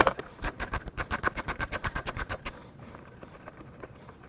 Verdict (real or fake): fake